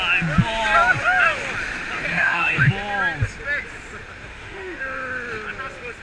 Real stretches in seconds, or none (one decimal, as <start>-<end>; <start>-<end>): 0.0-2.1; 2.7-4.3; 4.8-6.0